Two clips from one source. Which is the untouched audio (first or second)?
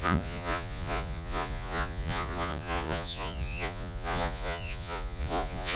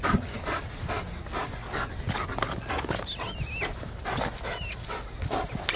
second